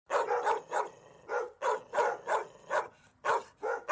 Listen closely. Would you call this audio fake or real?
real